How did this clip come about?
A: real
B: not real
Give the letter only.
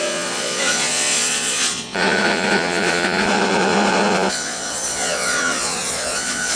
B